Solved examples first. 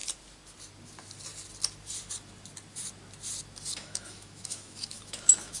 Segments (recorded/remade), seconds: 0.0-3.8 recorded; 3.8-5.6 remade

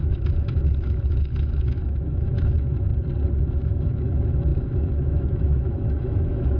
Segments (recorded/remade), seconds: 0.0-2.9 remade; 2.9-3.4 recorded; 3.4-6.6 remade